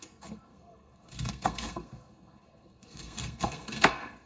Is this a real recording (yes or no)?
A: no